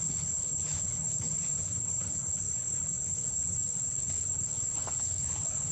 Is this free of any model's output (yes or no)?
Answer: no